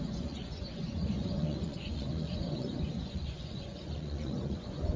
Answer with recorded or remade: remade